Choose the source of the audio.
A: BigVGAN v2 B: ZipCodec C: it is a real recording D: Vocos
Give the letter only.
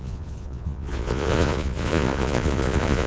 D